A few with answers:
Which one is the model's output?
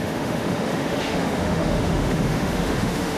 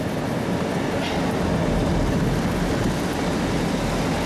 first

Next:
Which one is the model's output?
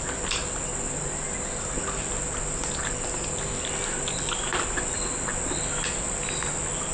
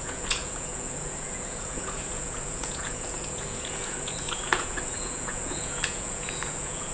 second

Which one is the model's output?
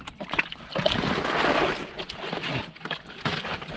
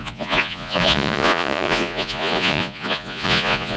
second